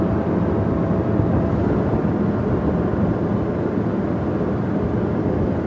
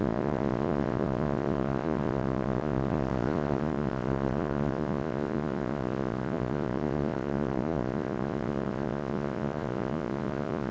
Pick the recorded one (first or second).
first